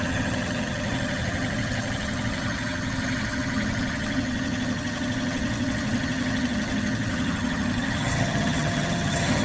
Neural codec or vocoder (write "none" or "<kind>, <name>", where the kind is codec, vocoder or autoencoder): vocoder, HiFi-GAN